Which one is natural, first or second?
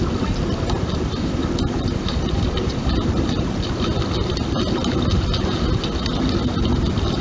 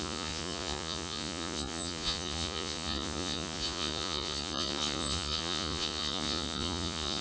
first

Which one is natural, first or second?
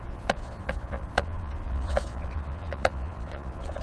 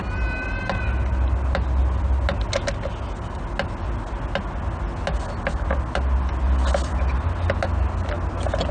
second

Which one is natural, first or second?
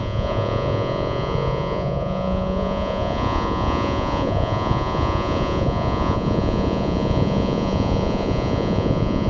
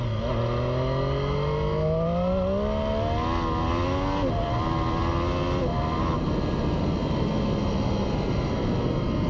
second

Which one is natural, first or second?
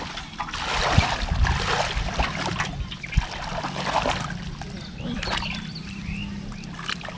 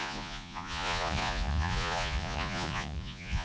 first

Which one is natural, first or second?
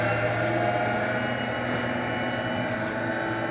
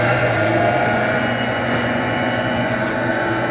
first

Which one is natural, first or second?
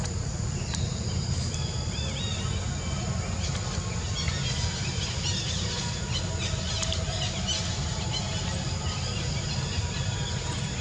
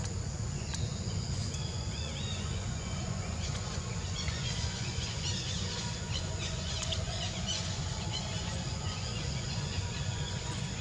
first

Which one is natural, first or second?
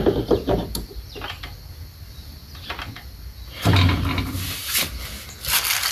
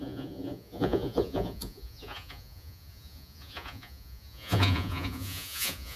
first